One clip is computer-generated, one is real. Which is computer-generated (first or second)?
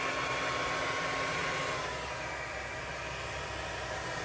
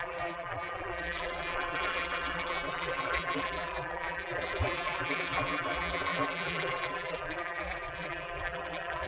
second